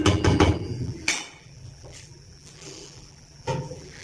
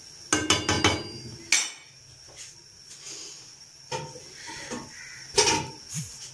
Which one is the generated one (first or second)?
first